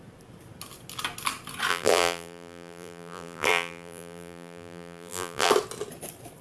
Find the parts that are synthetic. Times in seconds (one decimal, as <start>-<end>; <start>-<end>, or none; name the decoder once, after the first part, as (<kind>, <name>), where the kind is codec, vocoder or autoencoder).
1.7-5.5 (vocoder, BigVGAN v2)